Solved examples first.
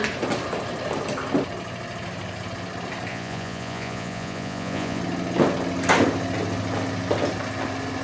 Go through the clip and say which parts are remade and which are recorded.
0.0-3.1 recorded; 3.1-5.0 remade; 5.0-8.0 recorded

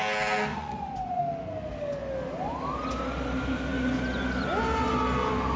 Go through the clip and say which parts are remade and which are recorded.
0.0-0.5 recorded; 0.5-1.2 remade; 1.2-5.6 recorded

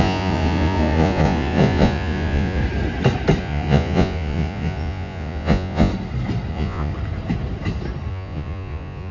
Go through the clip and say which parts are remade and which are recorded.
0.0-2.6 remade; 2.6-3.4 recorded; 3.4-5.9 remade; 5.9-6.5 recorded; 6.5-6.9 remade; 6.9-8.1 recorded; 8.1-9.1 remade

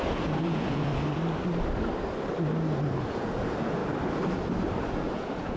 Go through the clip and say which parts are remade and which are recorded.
0.0-0.9 remade; 0.9-3.1 recorded; 3.1-3.8 remade; 3.8-4.8 recorded; 4.8-5.6 remade